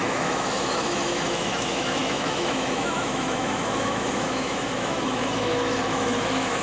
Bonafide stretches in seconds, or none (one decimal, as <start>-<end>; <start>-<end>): none